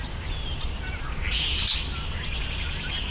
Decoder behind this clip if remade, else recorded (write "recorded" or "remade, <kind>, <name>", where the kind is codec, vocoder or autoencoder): recorded